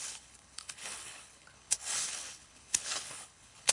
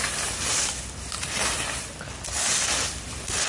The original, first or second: second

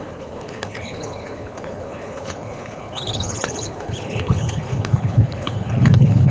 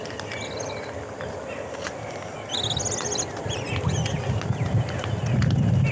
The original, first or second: second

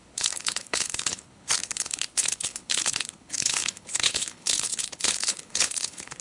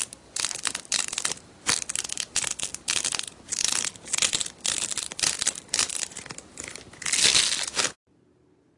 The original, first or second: second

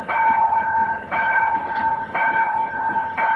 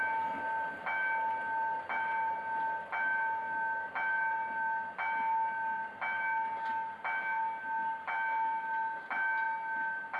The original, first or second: second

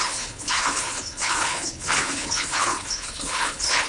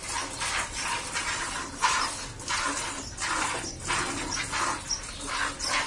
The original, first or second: second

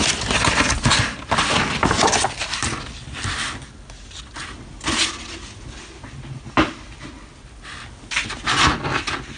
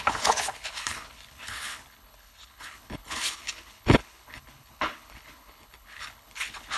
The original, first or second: first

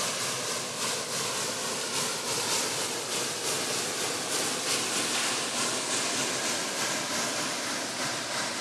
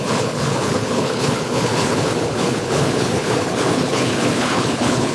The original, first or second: first